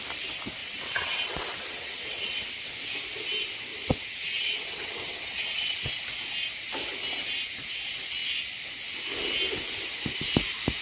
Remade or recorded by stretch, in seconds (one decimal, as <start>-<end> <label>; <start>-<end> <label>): 0.0-0.6 recorded; 0.6-2.7 remade; 2.7-3.7 recorded; 3.7-5.9 remade; 5.9-10.8 recorded